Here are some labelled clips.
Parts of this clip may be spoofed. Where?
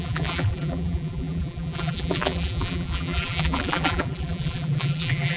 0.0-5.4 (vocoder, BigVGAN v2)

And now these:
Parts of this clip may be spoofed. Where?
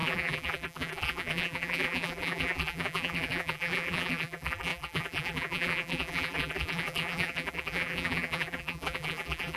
0.0-9.6 (vocoder, BigVGAN v2)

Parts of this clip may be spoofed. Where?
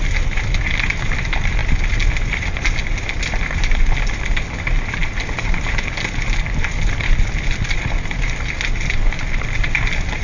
none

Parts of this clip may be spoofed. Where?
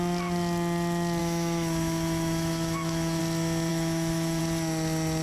1.2-3.2 (autoencoder, DAC-VAE); 3.7-4.4